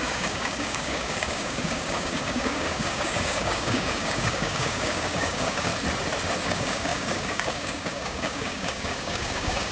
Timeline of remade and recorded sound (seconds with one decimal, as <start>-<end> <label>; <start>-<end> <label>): 0.0-5.7 remade; 5.7-6.4 recorded; 6.4-9.7 remade